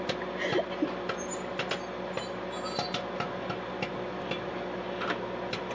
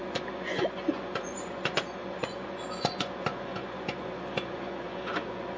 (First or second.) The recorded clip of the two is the first